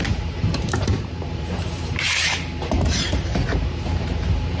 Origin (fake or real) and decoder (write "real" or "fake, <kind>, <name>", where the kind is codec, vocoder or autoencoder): fake, vocoder, BigVGAN v2